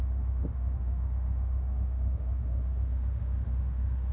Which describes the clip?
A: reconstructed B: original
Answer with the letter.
A